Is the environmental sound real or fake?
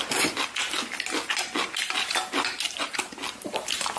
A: real